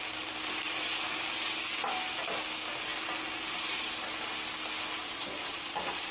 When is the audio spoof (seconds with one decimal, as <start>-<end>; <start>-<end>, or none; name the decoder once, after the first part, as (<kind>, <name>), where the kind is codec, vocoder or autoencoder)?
5.0-6.1 (vocoder, Vocos)